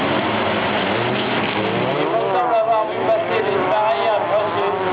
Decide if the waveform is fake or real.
real